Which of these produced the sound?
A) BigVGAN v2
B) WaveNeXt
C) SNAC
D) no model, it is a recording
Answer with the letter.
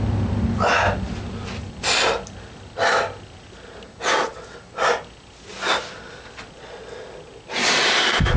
D